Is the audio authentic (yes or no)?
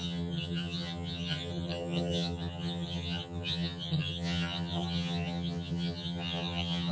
no